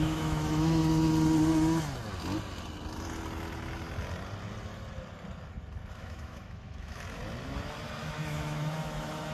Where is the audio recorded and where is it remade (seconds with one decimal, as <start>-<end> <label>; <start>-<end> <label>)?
0.0-0.8 remade; 0.8-5.9 recorded; 5.9-7.2 remade; 7.2-8.0 recorded; 8.0-9.3 remade